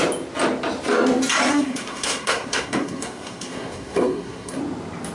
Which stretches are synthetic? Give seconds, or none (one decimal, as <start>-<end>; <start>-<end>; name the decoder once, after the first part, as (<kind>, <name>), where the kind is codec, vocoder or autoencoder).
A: 1.5-4.6 (codec, SNAC)